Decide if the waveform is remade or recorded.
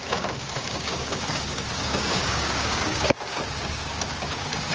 remade